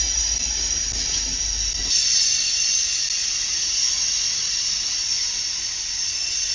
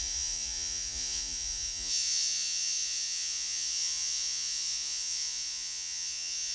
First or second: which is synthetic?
second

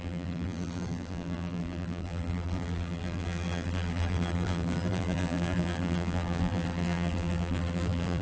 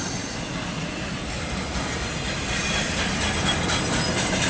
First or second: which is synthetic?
first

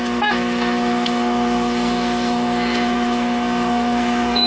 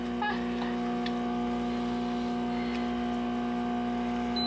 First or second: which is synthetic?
first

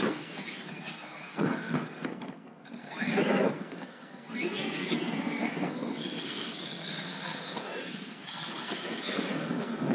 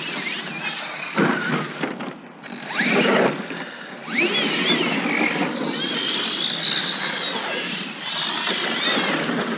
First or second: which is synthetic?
first